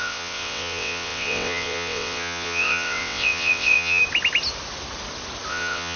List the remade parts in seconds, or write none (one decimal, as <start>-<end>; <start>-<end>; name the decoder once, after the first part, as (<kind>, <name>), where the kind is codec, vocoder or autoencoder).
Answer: 0.0-4.0 (vocoder, WaveNeXt); 5.5-6.0